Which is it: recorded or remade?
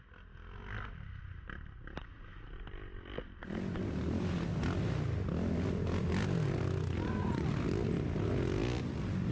recorded